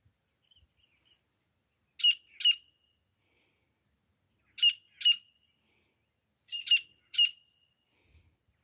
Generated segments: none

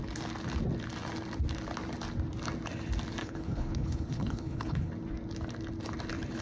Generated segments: 3.2-4.9

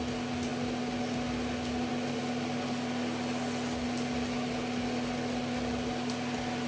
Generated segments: none

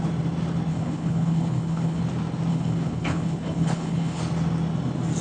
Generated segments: 0.7-2.0; 2.5-4.2